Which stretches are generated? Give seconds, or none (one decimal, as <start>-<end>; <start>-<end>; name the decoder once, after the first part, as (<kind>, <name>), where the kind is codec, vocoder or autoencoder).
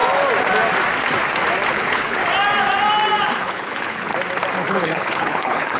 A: 1.7-2.2 (codec, HILCodec); 3.3-4.1; 4.7-5.8